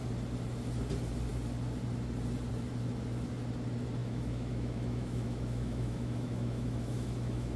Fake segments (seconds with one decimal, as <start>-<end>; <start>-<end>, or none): 4.0-7.6